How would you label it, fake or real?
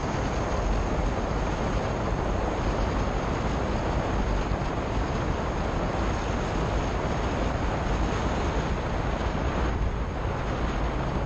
real